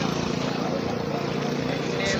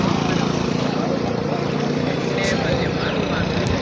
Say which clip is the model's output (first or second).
second